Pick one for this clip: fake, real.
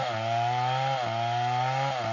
real